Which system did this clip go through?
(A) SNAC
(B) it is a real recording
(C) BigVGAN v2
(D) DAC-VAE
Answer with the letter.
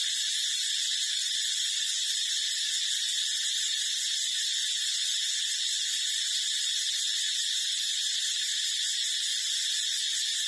B